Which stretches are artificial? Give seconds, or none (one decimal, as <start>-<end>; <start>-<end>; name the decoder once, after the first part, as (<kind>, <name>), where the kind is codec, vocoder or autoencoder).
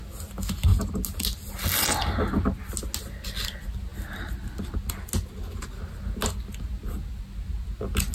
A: none